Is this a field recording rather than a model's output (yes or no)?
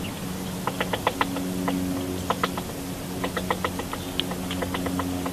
yes